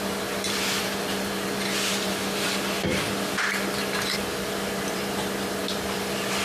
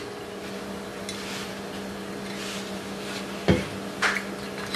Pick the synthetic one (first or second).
first